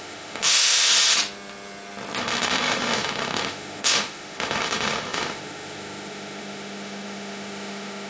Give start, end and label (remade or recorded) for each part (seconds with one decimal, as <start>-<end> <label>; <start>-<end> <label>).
0.0-0.9 remade; 0.9-2.2 recorded; 2.2-8.1 remade